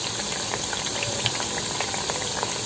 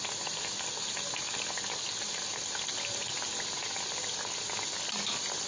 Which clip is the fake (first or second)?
first